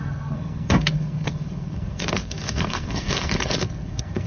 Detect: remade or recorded remade